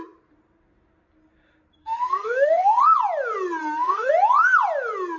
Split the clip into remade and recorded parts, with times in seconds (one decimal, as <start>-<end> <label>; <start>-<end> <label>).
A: 0.0-1.8 recorded; 1.8-2.8 remade; 2.8-3.6 recorded; 3.6-4.1 remade; 4.1-5.2 recorded